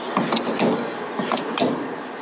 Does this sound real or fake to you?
real